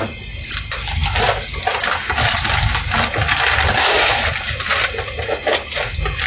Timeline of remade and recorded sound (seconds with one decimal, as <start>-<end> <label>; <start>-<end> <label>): 0.0-6.3 recorded